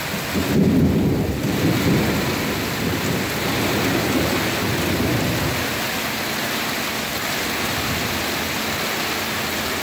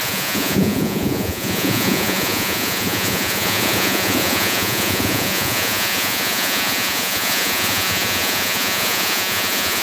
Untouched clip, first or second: first